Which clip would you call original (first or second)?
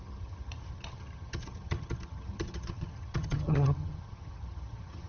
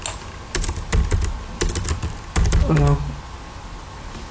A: second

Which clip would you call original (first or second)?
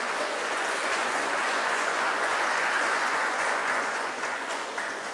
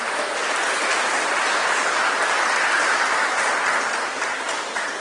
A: second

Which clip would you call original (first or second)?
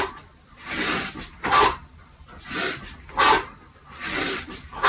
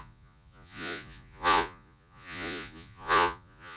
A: first